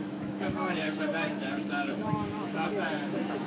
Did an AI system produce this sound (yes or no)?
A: yes